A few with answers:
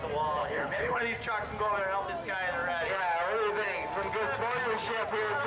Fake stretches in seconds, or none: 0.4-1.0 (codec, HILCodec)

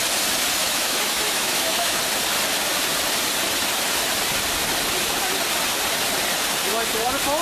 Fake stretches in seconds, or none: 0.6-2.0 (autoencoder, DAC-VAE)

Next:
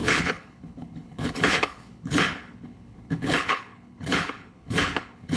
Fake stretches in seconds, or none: 0.0-5.4 (codec, HILCodec)

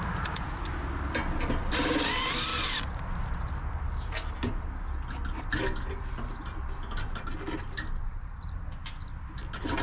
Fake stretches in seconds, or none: none

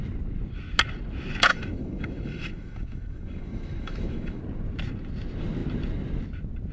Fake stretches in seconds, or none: 1.5-4.4 (autoencoder, DAC-VAE)

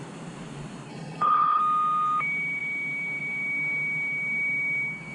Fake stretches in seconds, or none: 0.9-1.6 (codec, HILCodec)